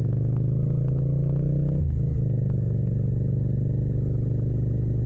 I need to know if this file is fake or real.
real